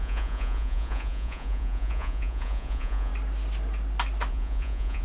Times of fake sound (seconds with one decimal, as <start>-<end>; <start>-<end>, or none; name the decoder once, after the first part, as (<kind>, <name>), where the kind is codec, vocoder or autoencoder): 0.0-3.1 (vocoder, Vocos); 4.3-5.0